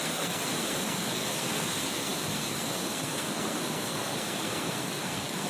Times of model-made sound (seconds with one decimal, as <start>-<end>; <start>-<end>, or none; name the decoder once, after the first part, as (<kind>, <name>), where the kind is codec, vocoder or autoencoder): 0.0-5.5 (codec, SNAC)

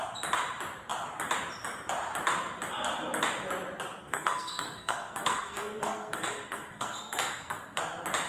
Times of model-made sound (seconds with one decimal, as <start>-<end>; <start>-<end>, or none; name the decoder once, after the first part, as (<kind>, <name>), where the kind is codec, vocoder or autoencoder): 4.0-7.8 (codec, SNAC)

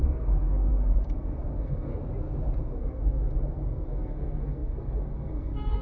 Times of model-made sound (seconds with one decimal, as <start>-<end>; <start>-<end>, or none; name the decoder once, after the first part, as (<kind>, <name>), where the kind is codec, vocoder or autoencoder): 0.0-1.9 (codec, SNAC); 2.6-5.8